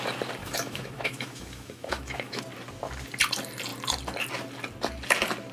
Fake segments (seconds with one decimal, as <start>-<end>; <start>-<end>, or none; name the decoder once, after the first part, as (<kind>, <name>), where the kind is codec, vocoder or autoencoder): 0.4-2.4 (autoencoder, DAC-VAE)